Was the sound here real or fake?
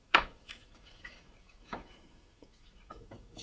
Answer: fake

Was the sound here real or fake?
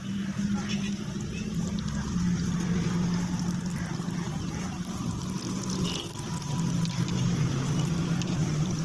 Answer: real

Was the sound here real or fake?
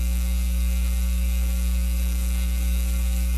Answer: fake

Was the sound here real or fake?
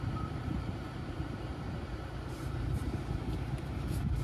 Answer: fake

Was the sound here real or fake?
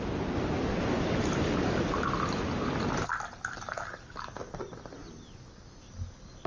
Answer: real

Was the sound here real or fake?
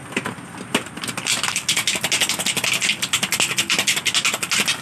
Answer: real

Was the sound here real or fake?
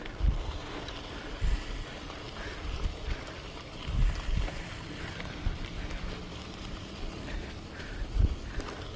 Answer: fake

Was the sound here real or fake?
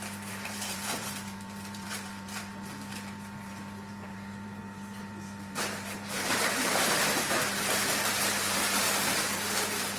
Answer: fake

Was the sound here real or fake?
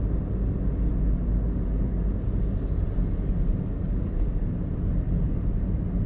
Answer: real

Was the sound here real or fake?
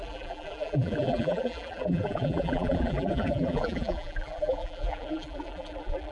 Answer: fake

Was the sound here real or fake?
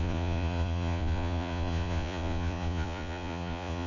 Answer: fake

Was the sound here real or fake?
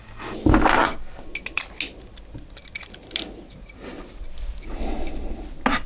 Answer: real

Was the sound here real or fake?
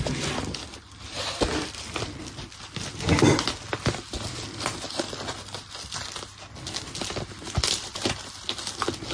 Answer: real